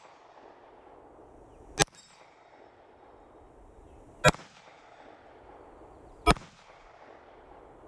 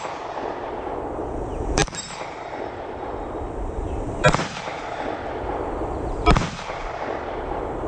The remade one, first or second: second